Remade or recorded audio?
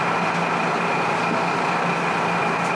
recorded